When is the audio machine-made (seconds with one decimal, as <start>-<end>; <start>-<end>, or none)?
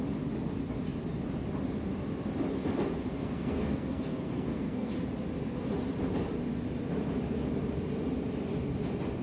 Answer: 3.1-4.9